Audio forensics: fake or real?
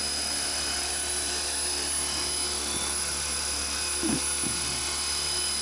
real